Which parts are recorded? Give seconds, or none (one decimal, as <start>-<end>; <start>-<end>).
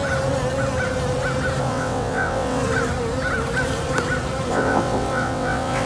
0.0-1.6; 2.6-4.5